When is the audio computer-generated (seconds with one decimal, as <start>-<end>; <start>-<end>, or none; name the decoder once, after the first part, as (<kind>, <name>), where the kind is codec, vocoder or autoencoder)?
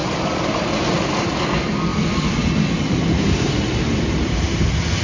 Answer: 0.0-1.1 (vocoder, BigVGAN v2)